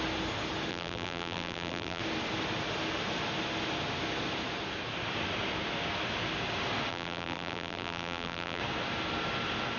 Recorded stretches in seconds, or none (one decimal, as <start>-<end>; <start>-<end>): 0.0-0.7; 2.0-6.9; 8.6-9.8